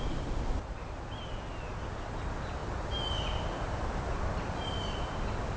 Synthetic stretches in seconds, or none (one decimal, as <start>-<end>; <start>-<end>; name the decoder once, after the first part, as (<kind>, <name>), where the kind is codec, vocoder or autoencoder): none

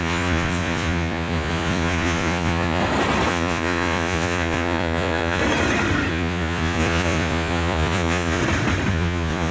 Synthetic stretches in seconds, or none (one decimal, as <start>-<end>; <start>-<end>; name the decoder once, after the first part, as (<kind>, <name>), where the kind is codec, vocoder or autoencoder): 0.0-2.8 (vocoder, Vocos); 3.3-5.4; 6.1-8.4; 8.9-9.5

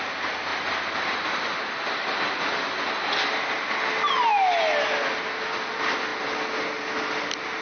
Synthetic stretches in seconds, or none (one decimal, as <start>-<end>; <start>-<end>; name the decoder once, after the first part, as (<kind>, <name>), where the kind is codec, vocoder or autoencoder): none

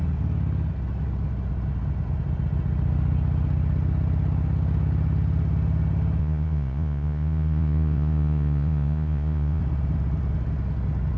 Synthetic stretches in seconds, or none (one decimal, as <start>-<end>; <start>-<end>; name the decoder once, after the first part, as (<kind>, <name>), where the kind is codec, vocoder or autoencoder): 6.2-9.6 (vocoder, Vocos)

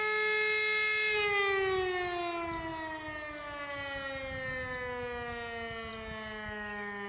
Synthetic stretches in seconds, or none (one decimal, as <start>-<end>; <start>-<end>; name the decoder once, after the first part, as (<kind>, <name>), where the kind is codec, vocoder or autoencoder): none

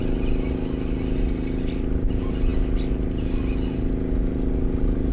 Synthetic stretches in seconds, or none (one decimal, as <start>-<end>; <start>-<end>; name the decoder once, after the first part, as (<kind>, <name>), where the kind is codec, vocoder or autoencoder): none

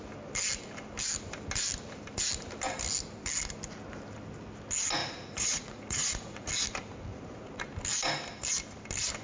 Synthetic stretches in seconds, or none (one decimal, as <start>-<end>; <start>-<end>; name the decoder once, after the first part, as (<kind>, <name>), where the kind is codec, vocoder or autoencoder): 5.0-6.5 (vocoder, Vocos); 7.1-7.6

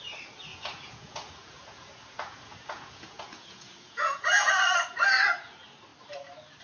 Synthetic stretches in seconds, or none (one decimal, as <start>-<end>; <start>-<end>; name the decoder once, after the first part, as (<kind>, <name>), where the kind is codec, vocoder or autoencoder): 0.5-4.5 (vocoder, Vocos)